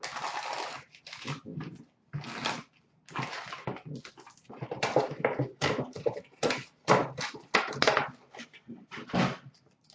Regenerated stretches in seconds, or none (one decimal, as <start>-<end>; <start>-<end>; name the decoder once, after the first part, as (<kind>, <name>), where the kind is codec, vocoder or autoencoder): none